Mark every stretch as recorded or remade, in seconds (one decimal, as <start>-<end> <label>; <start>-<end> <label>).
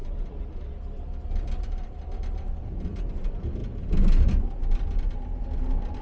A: 0.0-6.0 recorded